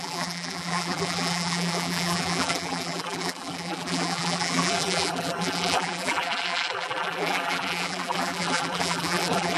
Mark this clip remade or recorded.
remade